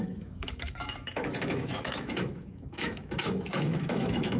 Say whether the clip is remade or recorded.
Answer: remade